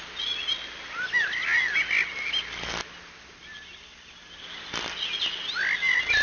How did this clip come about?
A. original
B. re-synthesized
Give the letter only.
A